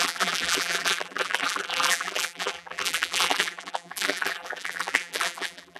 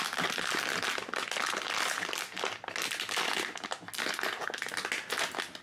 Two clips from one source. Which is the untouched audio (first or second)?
second